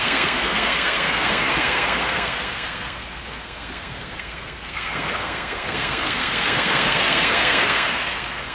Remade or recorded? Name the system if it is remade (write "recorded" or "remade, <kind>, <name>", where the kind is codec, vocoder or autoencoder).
remade, codec, SNAC